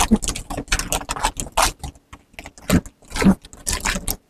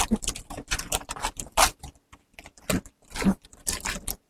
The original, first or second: first